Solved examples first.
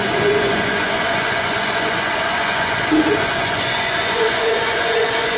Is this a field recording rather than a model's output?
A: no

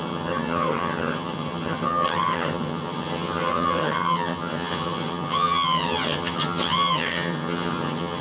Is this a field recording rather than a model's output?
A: no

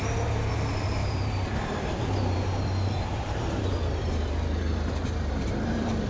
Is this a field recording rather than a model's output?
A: no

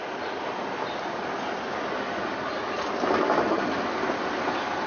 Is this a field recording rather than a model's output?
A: yes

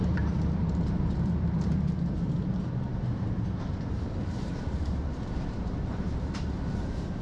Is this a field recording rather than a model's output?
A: no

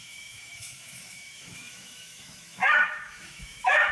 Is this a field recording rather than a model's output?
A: no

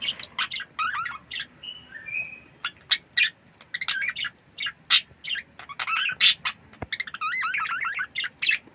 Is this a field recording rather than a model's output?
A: yes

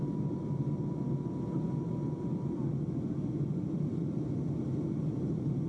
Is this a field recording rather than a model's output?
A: yes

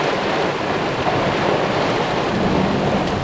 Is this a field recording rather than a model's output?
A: yes